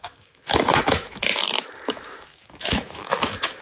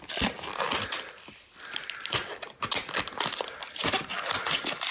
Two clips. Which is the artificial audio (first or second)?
first